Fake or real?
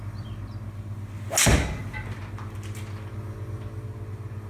real